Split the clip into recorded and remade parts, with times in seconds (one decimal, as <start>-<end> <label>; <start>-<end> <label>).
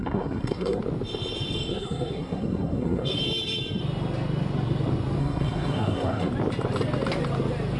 0.0-0.8 remade; 0.8-1.7 recorded; 1.7-3.2 remade; 3.2-5.2 recorded; 5.2-6.3 remade; 6.3-7.8 recorded